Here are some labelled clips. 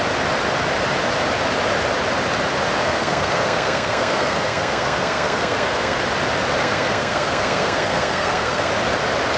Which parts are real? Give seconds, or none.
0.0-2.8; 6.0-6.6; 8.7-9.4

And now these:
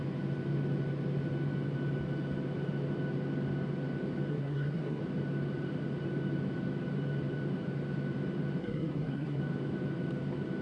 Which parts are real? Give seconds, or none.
0.0-4.3; 5.0-8.6; 9.4-10.6